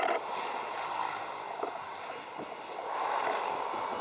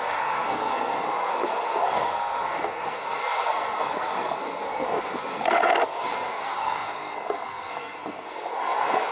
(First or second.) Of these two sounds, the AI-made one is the second